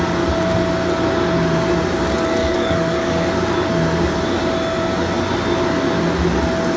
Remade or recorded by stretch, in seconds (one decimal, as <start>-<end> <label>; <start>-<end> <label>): 0.0-2.4 recorded; 2.4-3.3 remade; 3.3-6.8 recorded